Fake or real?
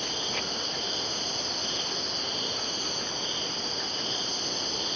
real